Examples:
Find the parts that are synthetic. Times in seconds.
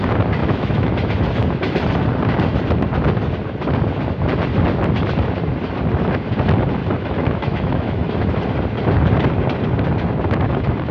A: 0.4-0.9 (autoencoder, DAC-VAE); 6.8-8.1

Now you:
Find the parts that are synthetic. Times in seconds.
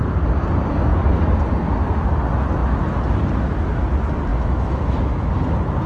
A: 4.3-5.3 (autoencoder, DAC-VAE)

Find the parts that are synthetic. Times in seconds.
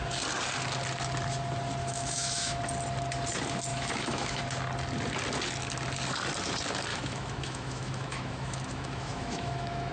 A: 1.8-2.6 (autoencoder, DAC-VAE); 3.7-4.4; 6.9-9.9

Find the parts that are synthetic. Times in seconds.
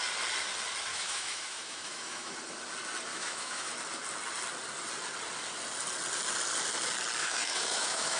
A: 0.9-2.3 (autoencoder, DAC-VAE); 3.1-3.7; 7.2-8.2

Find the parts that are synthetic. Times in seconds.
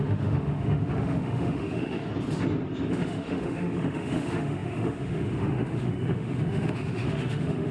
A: 0.0-2.1 (autoencoder, DAC-VAE); 2.9-7.7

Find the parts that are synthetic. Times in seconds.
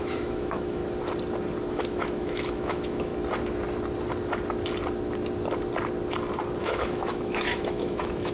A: 0.0-0.8 (autoencoder, DAC-VAE); 1.7-3.1; 6.6-8.3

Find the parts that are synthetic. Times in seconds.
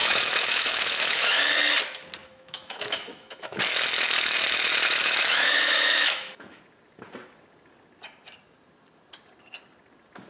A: 0.0-1.4 (autoencoder, DAC-VAE); 2.2-6.6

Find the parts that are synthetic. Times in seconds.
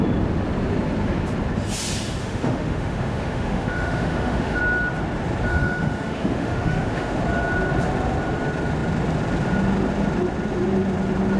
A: 2.2-4.6 (autoencoder, DAC-VAE); 5.5-7.2